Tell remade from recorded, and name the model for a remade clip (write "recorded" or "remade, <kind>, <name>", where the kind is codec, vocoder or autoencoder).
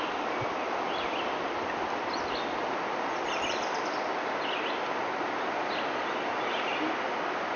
recorded